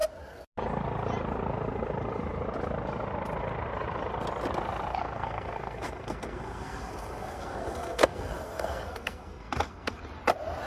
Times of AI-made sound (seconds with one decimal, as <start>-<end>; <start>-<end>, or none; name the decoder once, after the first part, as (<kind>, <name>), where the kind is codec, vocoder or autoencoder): 4.9-10.0 (codec, SNAC)